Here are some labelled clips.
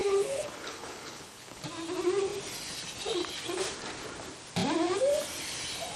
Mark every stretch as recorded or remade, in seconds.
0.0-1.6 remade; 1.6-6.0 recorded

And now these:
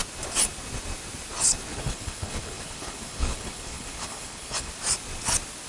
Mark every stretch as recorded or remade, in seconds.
0.0-1.7 recorded; 1.7-4.7 remade; 4.7-5.7 recorded

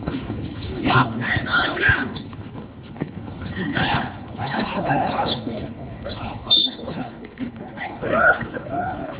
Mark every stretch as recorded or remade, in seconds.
0.0-9.2 remade

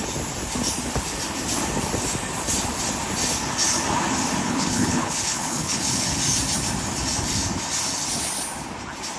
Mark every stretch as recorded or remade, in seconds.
0.0-4.4 recorded; 4.4-6.2 remade; 6.2-9.2 recorded

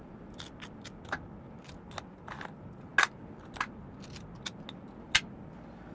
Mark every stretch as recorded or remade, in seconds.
0.0-5.9 recorded

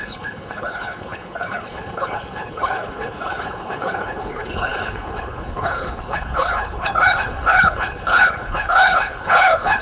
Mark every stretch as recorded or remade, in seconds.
0.0-9.8 remade

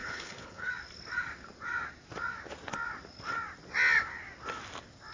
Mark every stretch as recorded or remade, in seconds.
0.0-0.7 remade; 0.7-5.1 recorded